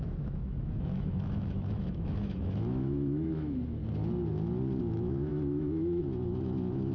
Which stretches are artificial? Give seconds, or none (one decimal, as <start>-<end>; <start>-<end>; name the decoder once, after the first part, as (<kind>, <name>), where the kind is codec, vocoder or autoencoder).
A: 0.0-3.8 (autoencoder, DAC-VAE); 4.8-6.9